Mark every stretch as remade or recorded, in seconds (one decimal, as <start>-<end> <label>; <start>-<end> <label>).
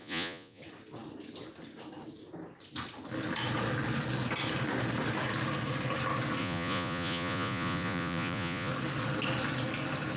0.0-0.6 remade; 0.6-6.4 recorded; 6.4-8.7 remade; 8.7-10.2 recorded